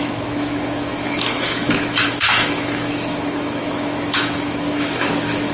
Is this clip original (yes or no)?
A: no